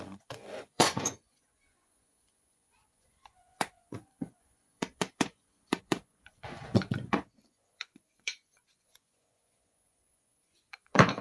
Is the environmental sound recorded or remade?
remade